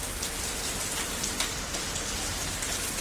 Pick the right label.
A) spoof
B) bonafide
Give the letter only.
B